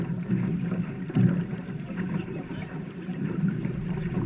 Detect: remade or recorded remade